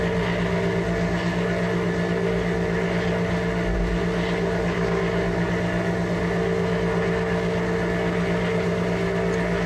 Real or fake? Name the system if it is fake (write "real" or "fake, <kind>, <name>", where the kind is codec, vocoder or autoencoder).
real